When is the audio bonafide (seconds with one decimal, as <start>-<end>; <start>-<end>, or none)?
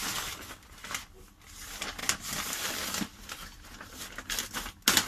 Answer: 0.0-5.1